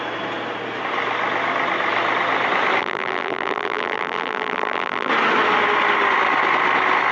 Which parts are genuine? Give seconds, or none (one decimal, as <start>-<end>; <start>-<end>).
0.0-2.8; 5.1-7.1